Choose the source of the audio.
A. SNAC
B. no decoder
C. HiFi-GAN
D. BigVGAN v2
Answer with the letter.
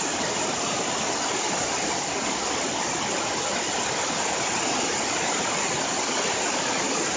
B